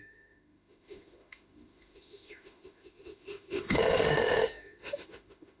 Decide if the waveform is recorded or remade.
remade